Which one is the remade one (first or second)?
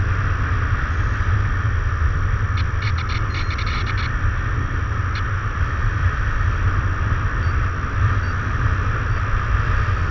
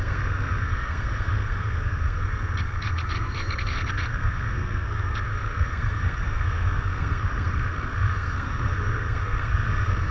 second